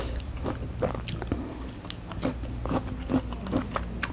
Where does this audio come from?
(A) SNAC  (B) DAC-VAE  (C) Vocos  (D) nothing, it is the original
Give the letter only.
D